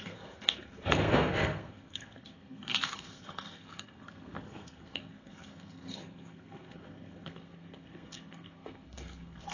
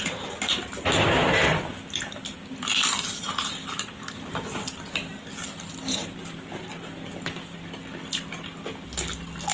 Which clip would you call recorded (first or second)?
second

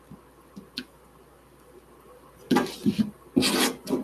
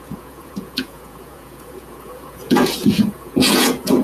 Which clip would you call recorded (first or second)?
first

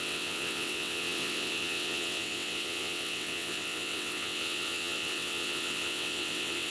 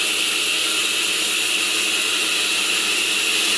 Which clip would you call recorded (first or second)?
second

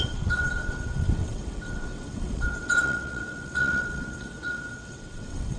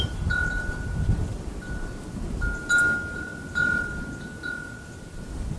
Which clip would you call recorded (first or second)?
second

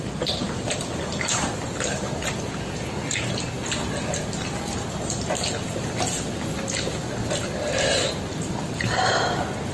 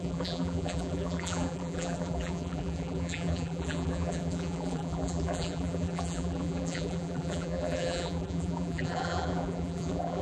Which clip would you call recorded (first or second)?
first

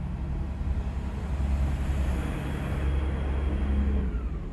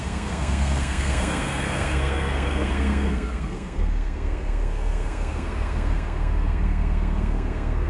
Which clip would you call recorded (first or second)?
first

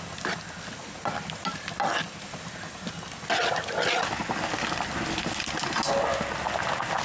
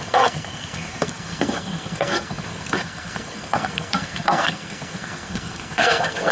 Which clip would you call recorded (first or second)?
first